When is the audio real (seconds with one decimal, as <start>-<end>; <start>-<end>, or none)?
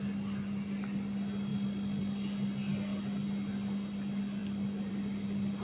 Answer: 0.0-5.6